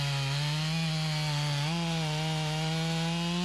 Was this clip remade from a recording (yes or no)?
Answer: no